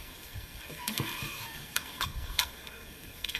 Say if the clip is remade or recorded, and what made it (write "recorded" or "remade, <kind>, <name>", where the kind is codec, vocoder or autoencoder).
remade, codec, SNAC